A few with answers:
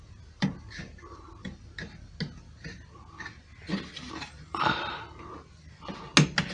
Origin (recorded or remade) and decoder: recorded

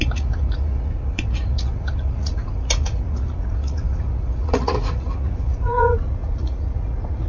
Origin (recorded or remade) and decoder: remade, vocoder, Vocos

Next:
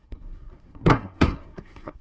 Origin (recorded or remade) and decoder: remade, codec, SNAC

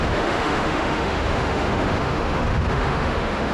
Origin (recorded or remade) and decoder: remade, autoencoder, DAC-VAE